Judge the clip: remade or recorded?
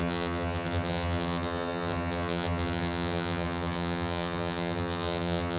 remade